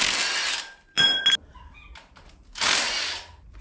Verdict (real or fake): real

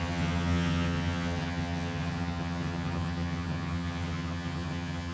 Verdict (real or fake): fake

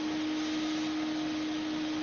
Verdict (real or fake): real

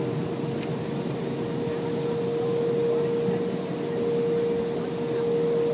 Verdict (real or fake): real